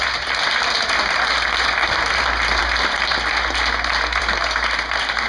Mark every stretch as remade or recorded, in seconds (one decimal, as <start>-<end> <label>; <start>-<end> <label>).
0.0-5.3 recorded